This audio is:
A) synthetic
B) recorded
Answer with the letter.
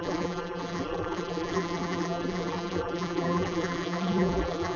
A